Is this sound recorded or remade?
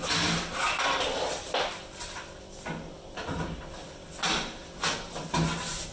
recorded